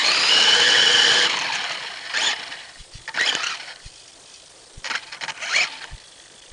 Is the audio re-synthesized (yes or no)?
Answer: yes